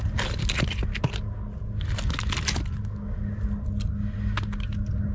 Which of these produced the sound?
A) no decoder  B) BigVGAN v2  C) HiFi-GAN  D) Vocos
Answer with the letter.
A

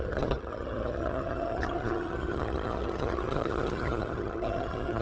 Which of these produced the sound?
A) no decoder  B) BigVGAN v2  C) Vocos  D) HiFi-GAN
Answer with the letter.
D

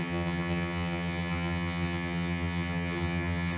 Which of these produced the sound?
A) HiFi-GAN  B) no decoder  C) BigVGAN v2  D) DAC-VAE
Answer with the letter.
A